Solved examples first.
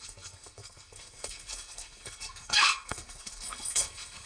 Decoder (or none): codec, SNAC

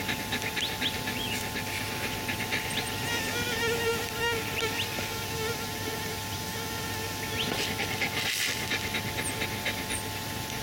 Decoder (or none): none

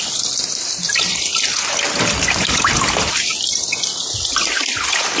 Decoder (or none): none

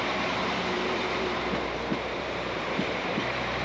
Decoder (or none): vocoder, BigVGAN v2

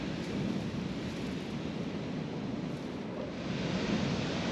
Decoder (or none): none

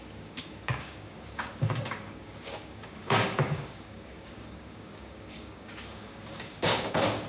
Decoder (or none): codec, DAC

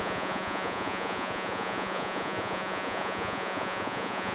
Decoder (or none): vocoder, Vocos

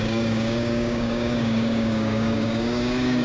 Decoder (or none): codec, DAC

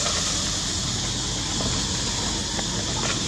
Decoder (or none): none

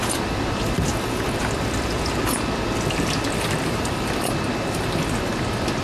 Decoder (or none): none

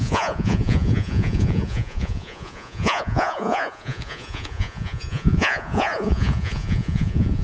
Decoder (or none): vocoder, Vocos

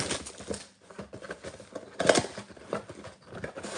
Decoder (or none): none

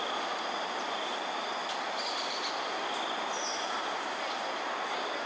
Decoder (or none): none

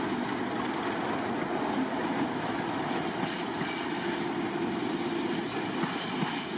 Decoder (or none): none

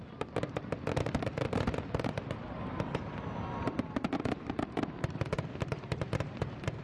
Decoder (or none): vocoder, BigVGAN v2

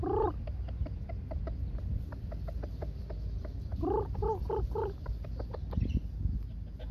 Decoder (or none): none